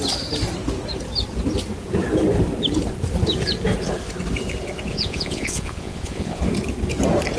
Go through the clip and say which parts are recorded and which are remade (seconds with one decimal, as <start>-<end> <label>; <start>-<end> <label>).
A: 0.0-4.9 recorded; 4.9-6.4 remade; 6.4-7.4 recorded